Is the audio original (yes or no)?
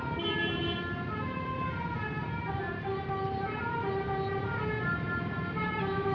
yes